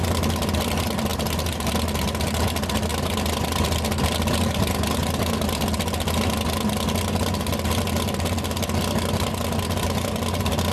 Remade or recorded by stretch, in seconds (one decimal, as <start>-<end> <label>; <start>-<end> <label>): 0.0-10.7 recorded